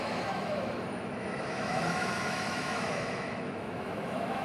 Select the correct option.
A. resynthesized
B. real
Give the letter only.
A